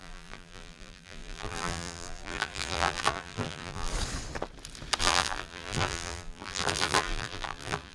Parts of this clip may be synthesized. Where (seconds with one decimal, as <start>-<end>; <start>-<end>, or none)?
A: 0.0-3.9; 5.0-7.9